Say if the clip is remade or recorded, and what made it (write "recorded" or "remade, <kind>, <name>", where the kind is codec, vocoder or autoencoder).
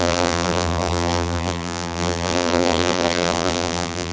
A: remade, vocoder, BigVGAN v2